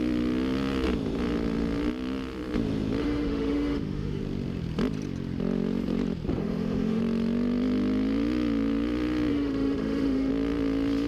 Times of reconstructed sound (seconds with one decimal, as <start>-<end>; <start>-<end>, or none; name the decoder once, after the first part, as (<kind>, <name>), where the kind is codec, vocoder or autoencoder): 3.0-4.2 (autoencoder, DAC-VAE); 6.4-7.0; 9.3-10.3